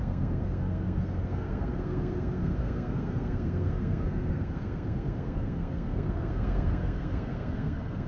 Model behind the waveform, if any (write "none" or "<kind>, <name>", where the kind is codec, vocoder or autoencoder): codec, SNAC